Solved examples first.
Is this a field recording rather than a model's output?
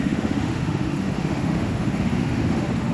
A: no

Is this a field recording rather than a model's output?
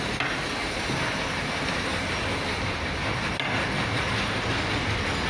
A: yes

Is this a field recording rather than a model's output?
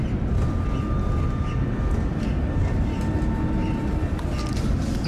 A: yes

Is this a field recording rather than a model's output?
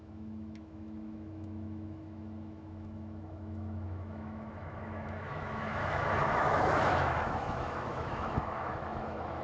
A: no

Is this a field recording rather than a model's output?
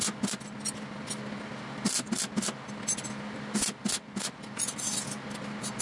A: yes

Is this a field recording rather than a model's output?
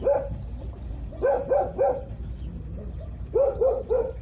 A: yes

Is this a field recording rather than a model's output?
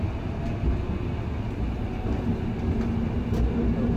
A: yes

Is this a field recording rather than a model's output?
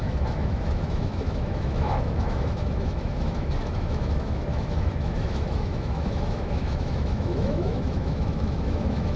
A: no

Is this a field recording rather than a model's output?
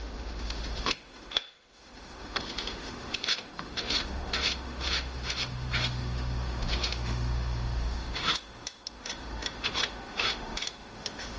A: no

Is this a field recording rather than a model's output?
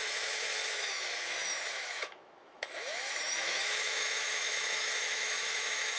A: no